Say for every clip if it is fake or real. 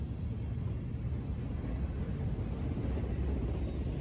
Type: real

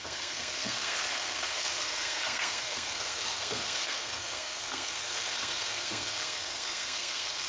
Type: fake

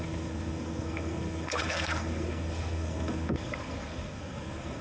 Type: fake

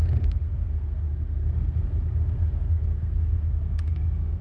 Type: fake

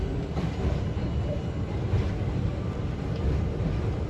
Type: real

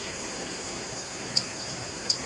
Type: fake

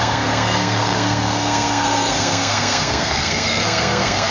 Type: fake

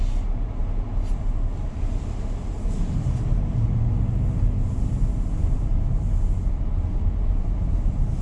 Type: real